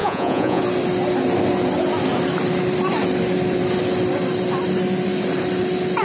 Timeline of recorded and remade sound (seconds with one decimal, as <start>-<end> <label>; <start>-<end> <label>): 0.0-0.6 remade; 0.6-6.0 recorded